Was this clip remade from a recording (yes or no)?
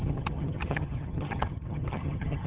yes